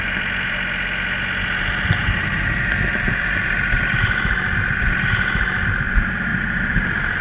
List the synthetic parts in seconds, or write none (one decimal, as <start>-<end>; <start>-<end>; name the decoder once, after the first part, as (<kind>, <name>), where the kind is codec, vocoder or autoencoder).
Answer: 2.0-4.1 (vocoder, BigVGAN v2); 6.3-7.2